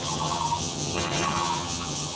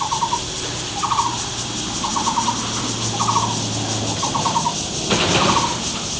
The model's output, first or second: first